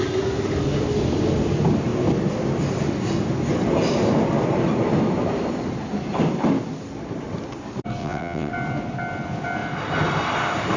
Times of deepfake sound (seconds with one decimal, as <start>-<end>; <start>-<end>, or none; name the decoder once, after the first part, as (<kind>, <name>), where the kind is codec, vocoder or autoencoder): 8.0-8.5 (vocoder, WaveNeXt)